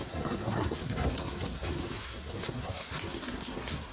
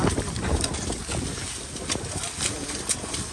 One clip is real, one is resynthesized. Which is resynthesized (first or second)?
first